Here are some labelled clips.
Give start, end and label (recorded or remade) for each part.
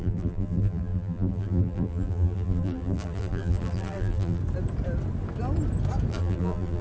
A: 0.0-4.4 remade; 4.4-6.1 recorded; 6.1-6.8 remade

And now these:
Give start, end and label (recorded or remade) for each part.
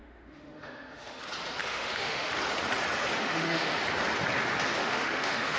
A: 0.0-1.2 remade; 1.2-1.6 recorded; 1.6-2.3 remade; 2.3-3.2 recorded; 3.2-3.7 remade; 3.7-4.8 recorded; 4.8-5.6 remade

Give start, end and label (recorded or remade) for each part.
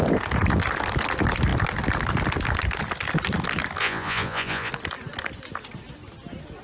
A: 0.0-3.8 recorded; 3.8-4.7 remade; 4.7-6.6 recorded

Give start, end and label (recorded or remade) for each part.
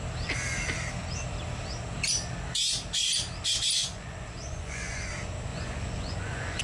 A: 0.0-3.8 recorded; 3.8-5.1 remade; 5.1-5.5 recorded; 5.5-6.6 remade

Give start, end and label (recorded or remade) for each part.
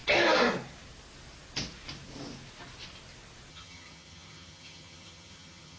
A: 0.0-3.5 recorded; 3.5-5.8 remade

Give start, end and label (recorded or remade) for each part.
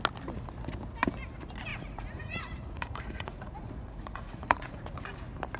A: 0.0-1.7 recorded; 1.7-4.9 remade; 4.9-5.6 recorded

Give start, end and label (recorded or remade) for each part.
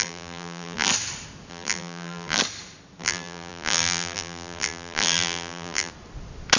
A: 0.0-0.9 remade; 0.9-1.5 recorded; 1.5-2.4 remade; 2.4-3.0 recorded; 3.0-5.9 remade; 5.9-6.6 recorded